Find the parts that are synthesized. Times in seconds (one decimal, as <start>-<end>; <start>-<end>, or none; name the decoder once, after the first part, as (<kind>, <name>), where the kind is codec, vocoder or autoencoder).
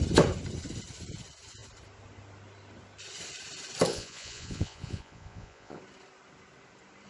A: 3.9-5.8 (vocoder, Vocos)